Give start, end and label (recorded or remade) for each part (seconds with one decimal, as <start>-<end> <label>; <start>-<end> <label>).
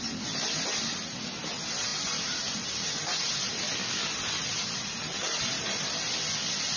0.0-1.9 recorded; 1.9-2.4 remade; 2.4-3.0 recorded; 3.0-3.6 remade; 3.6-4.5 recorded; 4.5-5.9 remade; 5.9-6.8 recorded